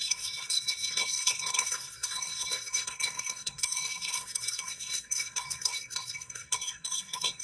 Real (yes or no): no